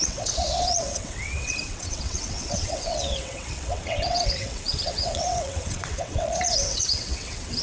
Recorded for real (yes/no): no